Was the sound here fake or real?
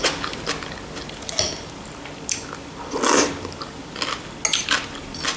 real